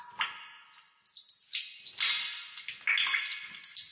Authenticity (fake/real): real